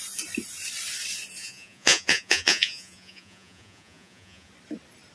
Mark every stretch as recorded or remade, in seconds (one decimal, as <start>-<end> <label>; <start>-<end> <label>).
0.0-1.4 recorded; 1.4-4.5 remade; 4.5-5.1 recorded